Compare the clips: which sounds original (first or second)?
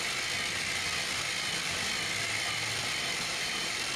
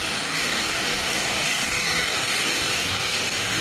first